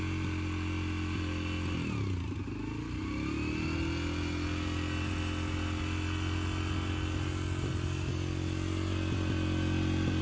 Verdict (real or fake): real